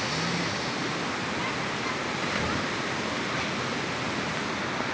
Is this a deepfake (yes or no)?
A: no